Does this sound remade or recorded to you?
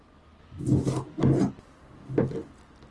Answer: recorded